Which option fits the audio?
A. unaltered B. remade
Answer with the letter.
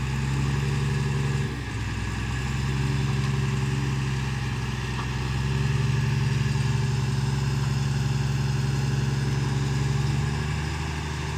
A